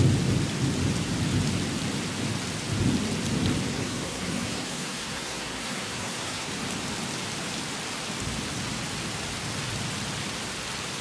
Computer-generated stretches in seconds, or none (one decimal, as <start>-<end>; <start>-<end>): 3.7-6.5

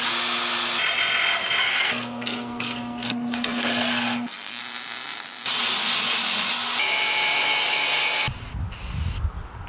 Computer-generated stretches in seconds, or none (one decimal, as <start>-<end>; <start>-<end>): 1.6-4.6